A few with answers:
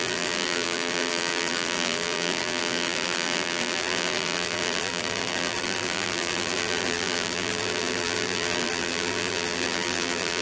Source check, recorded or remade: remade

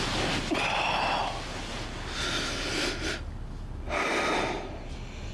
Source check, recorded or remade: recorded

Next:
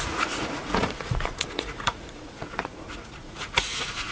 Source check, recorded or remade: remade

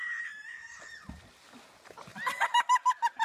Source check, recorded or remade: recorded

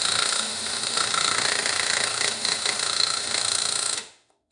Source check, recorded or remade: remade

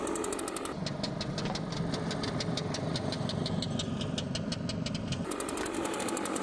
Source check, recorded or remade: recorded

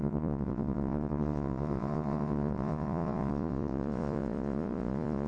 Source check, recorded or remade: remade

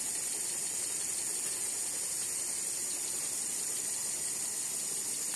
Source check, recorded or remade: recorded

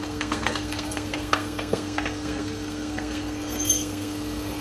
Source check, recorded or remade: remade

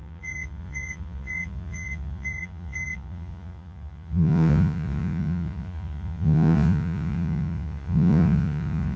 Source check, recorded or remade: remade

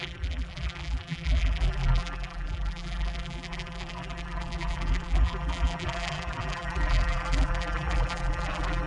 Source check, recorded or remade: remade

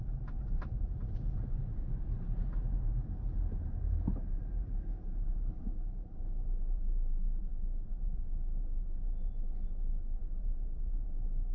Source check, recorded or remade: remade